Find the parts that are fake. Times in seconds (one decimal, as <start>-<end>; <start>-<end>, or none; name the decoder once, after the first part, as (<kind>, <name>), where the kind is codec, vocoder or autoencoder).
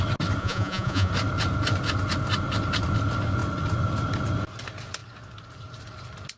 0.4-1.1 (vocoder, Vocos)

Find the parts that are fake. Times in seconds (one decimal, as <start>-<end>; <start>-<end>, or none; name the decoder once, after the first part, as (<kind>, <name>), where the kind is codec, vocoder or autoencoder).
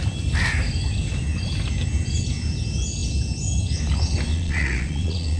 4.3-5.4 (vocoder, Vocos)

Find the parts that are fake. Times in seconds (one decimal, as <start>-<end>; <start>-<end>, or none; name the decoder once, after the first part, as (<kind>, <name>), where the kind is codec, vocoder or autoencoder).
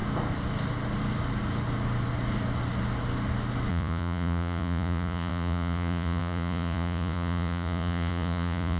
3.7-8.8 (vocoder, Vocos)